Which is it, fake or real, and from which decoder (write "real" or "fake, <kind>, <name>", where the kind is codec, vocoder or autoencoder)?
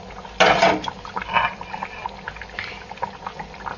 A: real